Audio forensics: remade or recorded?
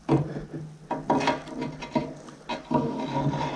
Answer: recorded